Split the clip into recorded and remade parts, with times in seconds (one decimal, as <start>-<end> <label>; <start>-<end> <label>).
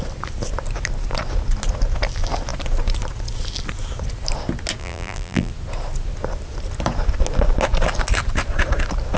0.0-4.8 recorded; 4.8-5.5 remade; 5.5-9.2 recorded